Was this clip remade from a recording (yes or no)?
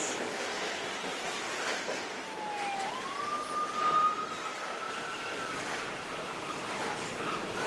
no